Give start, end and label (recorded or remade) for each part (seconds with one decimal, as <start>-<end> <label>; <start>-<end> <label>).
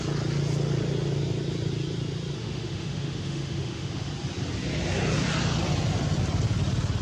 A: 0.0-2.4 recorded; 2.4-4.1 remade; 4.1-7.0 recorded